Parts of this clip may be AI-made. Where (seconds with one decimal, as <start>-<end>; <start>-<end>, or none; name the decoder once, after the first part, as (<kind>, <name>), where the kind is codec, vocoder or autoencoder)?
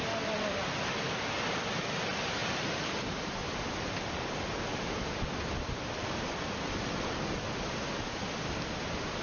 2.4-3.4 (vocoder, BigVGAN v2); 6.0-6.7